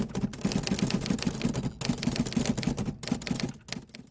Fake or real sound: real